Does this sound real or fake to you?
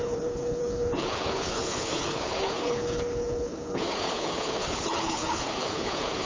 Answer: fake